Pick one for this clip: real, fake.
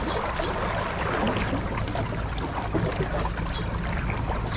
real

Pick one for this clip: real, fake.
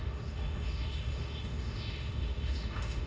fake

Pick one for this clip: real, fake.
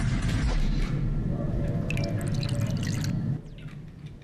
real